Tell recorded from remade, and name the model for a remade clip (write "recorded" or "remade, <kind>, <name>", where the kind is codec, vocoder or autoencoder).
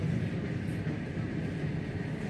recorded